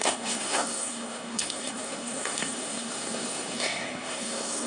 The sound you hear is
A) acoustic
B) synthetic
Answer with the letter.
B